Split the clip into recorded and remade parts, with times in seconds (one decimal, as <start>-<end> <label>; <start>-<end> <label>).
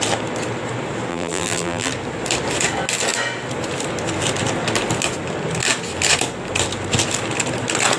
0.0-1.1 recorded; 1.1-1.9 remade; 1.9-8.0 recorded